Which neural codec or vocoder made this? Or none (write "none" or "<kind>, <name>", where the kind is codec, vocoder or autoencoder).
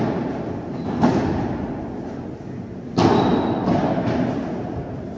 none